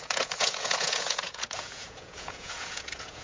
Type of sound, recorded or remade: remade